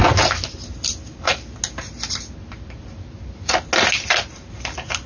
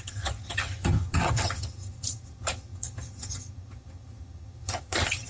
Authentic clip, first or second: first